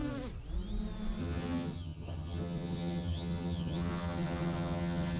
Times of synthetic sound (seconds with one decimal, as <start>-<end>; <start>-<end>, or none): 1.2-5.2